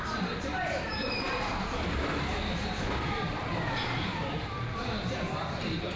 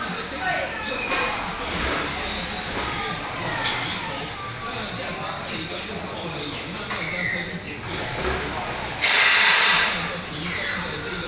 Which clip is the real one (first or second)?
second